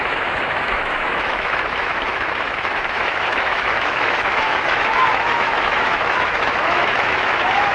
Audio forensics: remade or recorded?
remade